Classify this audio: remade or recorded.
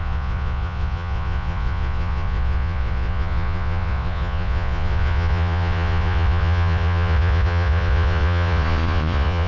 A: remade